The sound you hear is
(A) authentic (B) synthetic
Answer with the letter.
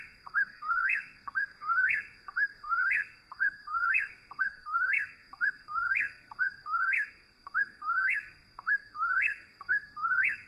B